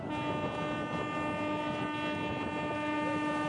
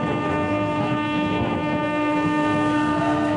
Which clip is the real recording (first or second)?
first